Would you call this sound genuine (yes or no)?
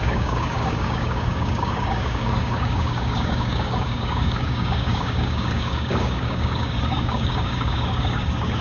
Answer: no